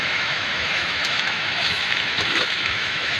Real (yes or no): no